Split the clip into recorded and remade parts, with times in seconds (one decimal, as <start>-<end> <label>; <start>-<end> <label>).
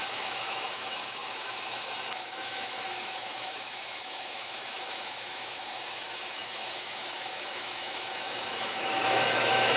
0.0-9.8 remade